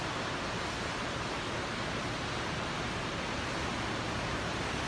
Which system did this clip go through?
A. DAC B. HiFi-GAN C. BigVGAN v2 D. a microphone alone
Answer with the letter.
D